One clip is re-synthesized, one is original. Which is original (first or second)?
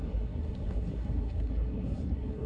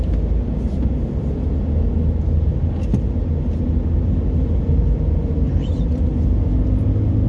second